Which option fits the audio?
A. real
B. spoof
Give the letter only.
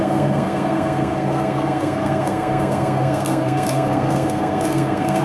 B